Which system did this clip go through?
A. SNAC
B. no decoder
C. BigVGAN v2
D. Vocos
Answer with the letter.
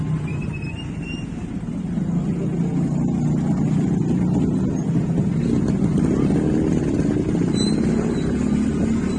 B